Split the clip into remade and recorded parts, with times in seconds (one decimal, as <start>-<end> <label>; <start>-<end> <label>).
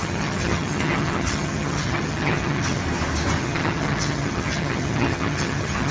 0.0-2.8 remade; 2.8-3.4 recorded; 3.4-5.9 remade